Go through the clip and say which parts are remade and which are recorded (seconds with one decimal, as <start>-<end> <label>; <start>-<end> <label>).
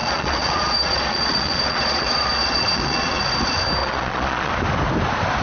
0.0-3.2 remade; 3.2-3.8 recorded; 3.8-4.5 remade; 4.5-5.4 recorded